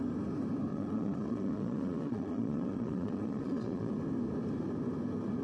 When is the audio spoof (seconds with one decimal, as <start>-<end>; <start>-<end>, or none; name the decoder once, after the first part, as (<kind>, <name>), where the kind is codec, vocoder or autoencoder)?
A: 0.7-3.9 (vocoder, Vocos)